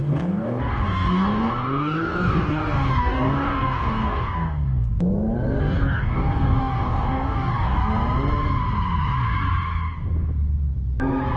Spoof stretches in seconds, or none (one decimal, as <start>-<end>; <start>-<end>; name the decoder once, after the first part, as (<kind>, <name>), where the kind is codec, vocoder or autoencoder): 0.0-4.9 (codec, DAC); 5.6-7.8